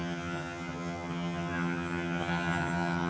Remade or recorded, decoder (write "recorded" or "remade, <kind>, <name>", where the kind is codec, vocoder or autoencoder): remade, vocoder, HiFi-GAN